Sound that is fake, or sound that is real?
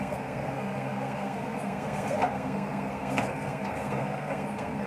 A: fake